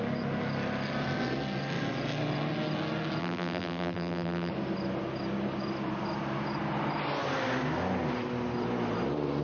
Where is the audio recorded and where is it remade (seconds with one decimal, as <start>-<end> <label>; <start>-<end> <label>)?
0.0-3.2 recorded; 3.2-4.5 remade; 4.5-9.4 recorded